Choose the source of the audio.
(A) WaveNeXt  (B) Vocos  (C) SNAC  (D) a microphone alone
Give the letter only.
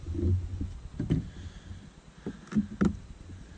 D